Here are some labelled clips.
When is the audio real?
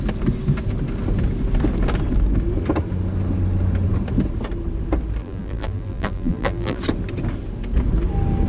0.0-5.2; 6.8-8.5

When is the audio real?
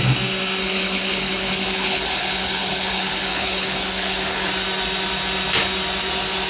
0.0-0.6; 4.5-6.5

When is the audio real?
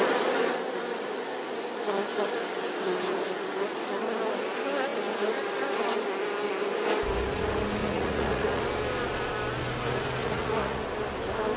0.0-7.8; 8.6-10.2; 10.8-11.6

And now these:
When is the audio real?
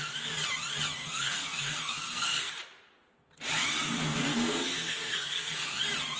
0.0-1.0; 2.5-4.2; 5.8-6.2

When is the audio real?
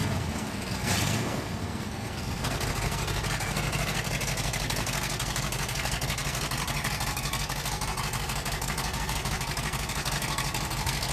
none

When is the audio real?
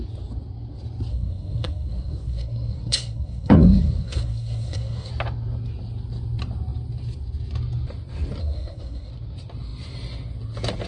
0.0-1.1; 5.1-8.4; 9.1-10.9